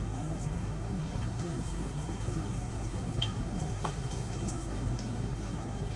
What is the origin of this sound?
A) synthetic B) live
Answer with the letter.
A